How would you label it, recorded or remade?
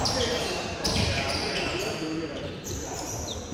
remade